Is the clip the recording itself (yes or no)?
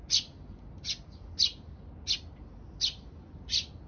yes